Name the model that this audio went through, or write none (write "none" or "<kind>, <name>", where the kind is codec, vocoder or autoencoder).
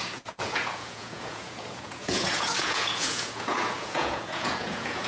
vocoder, Vocos